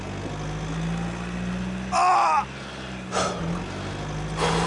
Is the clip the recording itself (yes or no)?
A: yes